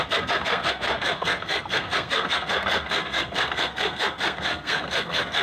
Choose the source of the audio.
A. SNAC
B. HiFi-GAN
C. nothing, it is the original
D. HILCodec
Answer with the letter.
A